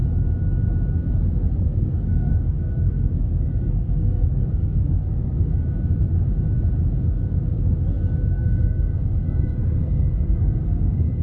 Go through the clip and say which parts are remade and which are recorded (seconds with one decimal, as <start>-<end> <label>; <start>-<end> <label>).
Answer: 0.0-1.6 recorded; 1.6-5.5 remade; 5.5-8.3 recorded; 8.3-11.2 remade